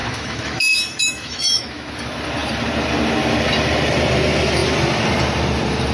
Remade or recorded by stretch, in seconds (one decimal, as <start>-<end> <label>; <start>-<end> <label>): 0.0-1.9 remade; 1.9-5.9 recorded

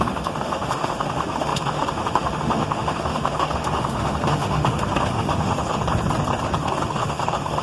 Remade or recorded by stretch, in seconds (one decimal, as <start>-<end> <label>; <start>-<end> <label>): 0.0-5.8 remade; 5.8-6.6 recorded; 6.6-7.6 remade